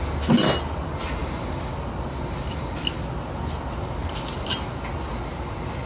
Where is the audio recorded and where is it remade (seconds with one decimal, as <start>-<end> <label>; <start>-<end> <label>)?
0.0-5.9 recorded